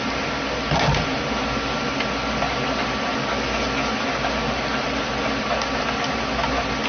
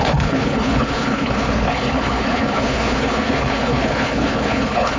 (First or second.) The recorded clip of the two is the first